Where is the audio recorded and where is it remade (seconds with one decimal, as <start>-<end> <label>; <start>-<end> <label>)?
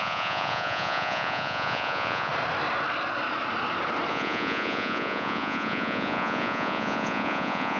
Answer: 0.0-2.3 remade; 2.3-4.1 recorded; 4.1-7.8 remade